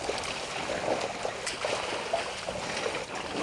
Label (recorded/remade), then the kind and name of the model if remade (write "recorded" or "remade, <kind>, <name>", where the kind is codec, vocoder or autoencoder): recorded